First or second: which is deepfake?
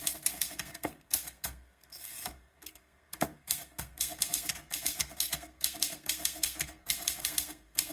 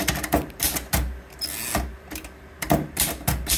first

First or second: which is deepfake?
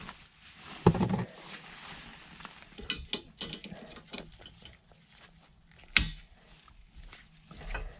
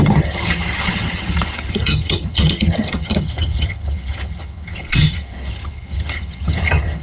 second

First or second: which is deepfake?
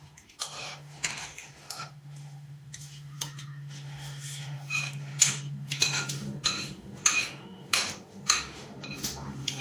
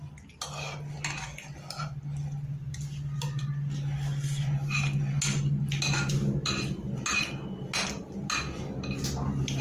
first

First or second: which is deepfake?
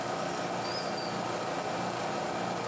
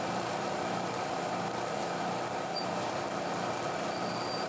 second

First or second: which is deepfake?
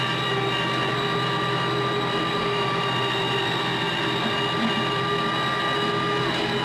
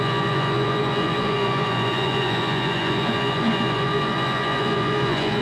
second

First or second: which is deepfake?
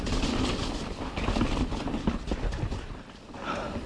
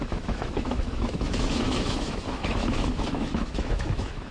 second